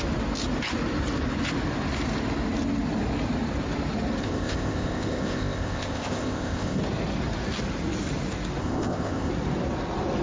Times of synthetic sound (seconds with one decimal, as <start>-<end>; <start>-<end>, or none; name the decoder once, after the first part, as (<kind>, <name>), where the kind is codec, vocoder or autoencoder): 4.2-6.8 (codec, ZipCodec); 8.6-9.3